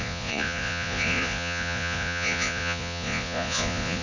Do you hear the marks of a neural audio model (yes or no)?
yes